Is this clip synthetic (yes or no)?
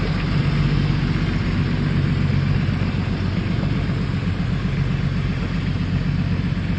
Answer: no